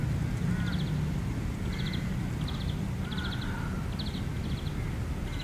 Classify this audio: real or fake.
real